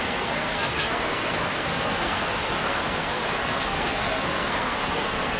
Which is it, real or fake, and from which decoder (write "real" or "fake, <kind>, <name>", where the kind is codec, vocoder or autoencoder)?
fake, codec, SNAC